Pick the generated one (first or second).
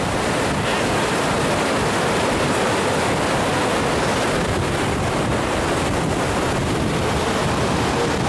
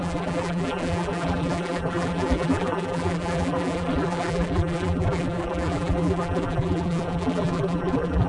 second